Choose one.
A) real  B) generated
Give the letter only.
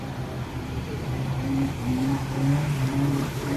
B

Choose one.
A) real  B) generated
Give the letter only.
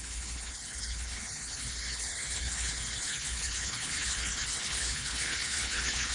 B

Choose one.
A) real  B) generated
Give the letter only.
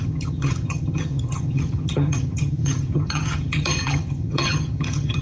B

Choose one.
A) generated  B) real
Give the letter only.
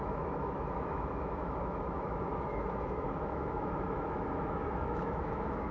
A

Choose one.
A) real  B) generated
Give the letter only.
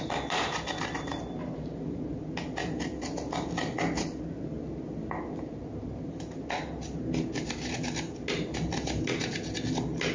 A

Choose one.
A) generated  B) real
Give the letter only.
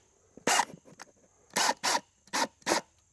B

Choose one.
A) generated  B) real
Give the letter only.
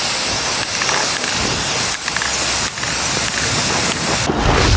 B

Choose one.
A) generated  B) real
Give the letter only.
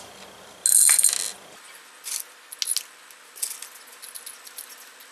B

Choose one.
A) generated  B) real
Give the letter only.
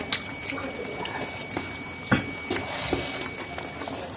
B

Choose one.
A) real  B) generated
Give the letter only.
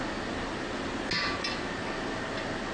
A